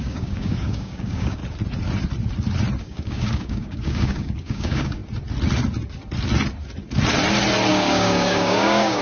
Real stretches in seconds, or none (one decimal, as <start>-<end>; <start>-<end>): 1.4-2.8; 5.0-7.7